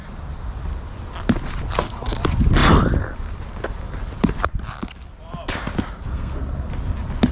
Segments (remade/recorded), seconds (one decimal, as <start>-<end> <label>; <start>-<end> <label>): 0.0-6.1 recorded; 6.1-6.7 remade; 6.7-7.3 recorded